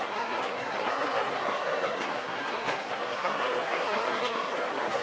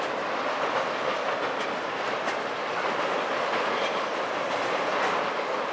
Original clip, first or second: second